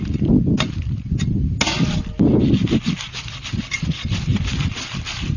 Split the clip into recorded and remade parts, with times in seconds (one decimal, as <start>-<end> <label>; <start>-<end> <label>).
0.0-5.4 recorded